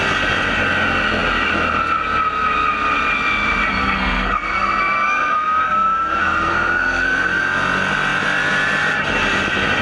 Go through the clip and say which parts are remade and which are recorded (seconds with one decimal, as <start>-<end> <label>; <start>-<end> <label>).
0.0-3.8 recorded; 3.8-7.4 remade; 7.4-9.8 recorded